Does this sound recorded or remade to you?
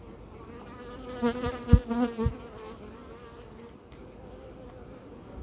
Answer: recorded